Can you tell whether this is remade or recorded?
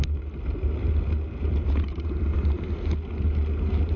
recorded